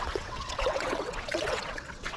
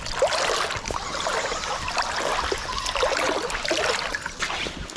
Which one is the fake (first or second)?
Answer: first